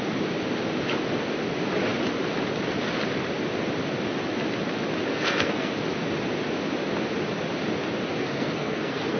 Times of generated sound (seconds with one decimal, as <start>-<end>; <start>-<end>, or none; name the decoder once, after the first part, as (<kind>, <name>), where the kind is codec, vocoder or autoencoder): 5.1-5.7 (codec, SNAC); 8.2-9.2